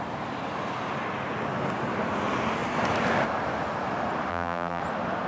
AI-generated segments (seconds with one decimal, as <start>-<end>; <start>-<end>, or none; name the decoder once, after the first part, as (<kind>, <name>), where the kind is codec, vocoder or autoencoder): 4.3-4.8 (vocoder, BigVGAN v2)